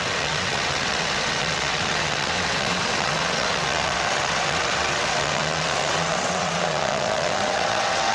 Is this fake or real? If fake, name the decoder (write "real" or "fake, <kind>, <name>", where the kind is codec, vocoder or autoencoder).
fake, vocoder, WaveNeXt